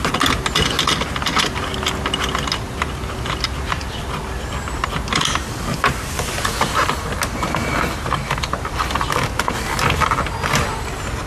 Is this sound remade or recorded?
recorded